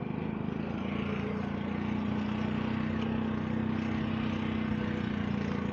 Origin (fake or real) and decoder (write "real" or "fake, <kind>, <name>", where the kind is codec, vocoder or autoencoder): real